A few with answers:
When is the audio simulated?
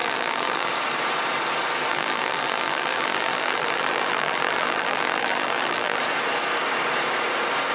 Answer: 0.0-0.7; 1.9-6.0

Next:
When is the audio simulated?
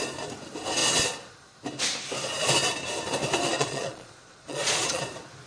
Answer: 3.5-5.0